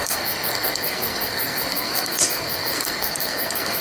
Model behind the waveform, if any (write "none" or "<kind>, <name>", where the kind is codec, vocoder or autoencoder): codec, SNAC